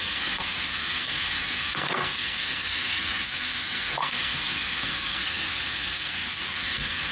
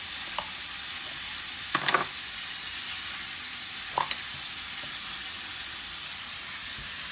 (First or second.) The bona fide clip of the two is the second